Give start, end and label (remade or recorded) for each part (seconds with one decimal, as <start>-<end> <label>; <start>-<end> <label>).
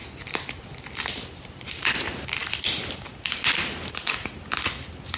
0.0-5.2 recorded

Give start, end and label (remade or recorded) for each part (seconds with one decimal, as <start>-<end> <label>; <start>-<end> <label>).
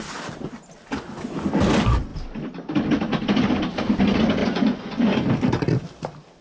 0.0-4.4 recorded; 4.4-5.3 remade; 5.3-6.4 recorded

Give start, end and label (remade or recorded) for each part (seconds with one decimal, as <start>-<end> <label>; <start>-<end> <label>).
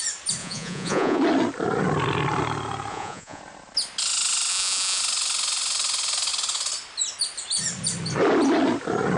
0.0-0.4 recorded; 0.4-1.2 remade; 1.2-2.9 recorded; 2.9-3.4 remade; 3.4-4.5 recorded; 4.5-5.0 remade; 5.0-9.2 recorded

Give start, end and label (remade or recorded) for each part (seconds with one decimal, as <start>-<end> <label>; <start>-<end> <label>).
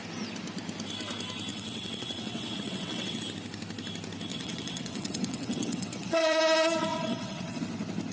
0.0-1.5 recorded; 1.5-3.2 remade; 3.2-4.3 recorded; 4.3-6.4 remade; 6.4-6.9 recorded; 6.9-7.6 remade; 7.6-8.1 recorded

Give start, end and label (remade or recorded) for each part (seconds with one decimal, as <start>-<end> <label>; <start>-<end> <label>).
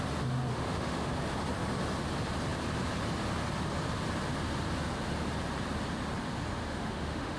0.0-0.5 recorded; 0.5-1.1 remade; 1.1-6.6 recorded; 6.6-7.4 remade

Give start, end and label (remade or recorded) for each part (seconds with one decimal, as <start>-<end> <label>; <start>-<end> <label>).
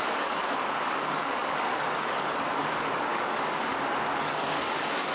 0.0-3.7 remade; 3.7-4.2 recorded; 4.2-5.1 remade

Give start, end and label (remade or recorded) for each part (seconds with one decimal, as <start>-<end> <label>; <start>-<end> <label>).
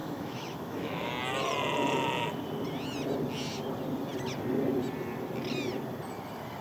0.0-1.1 remade; 1.1-6.6 recorded